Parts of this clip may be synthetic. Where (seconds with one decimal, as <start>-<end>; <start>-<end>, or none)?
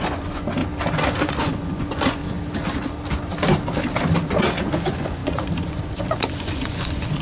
0.0-0.6; 1.2-2.2; 4.6-7.2